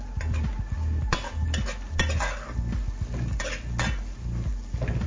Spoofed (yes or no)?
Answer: no